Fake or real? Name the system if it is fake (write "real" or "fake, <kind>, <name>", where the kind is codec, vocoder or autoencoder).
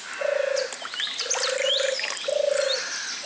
real